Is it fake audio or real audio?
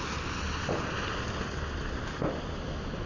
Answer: real